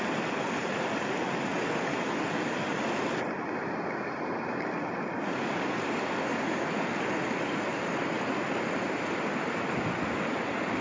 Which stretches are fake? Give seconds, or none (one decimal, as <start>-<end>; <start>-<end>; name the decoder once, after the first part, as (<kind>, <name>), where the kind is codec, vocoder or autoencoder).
none